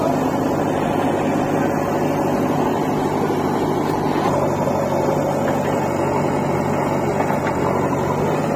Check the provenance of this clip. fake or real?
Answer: real